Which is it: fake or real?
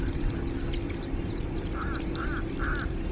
real